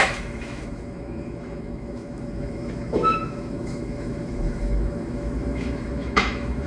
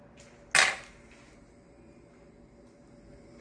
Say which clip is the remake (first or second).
first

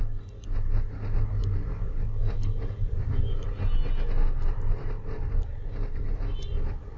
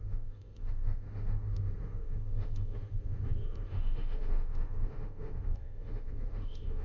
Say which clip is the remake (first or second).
second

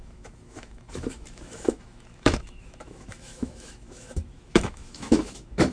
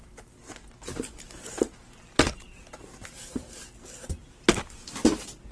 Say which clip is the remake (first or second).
first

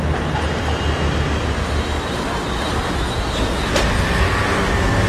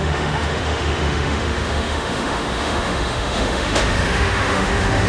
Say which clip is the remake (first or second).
second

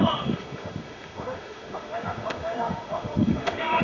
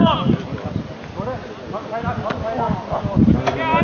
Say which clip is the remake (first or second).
first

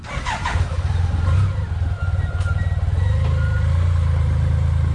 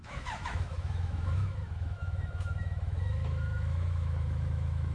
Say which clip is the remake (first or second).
second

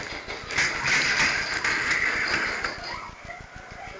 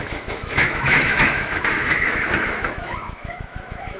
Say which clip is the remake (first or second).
second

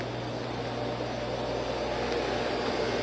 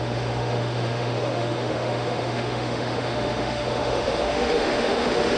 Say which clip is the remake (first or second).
second